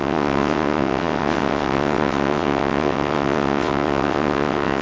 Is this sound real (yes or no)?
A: no